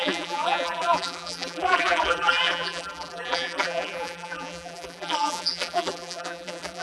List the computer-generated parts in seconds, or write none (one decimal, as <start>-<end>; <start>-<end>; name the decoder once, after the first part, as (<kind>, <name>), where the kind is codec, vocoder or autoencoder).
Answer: 0.0-6.8 (vocoder, BigVGAN v2)